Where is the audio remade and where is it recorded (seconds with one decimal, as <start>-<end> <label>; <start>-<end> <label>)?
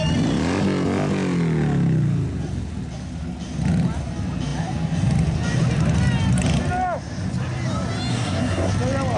0.0-8.1 recorded; 8.1-8.7 remade; 8.7-9.2 recorded